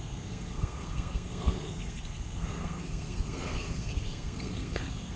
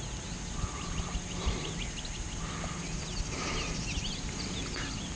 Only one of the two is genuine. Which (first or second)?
second